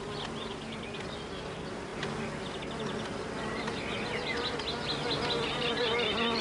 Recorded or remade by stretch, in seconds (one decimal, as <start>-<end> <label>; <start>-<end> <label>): 0.0-6.4 recorded